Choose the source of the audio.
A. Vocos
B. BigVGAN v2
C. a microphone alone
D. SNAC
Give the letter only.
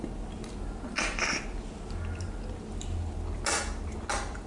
C